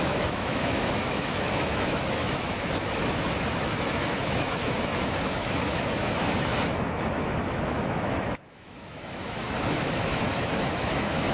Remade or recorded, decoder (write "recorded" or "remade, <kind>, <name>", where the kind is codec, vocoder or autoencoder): remade, autoencoder, DAC-VAE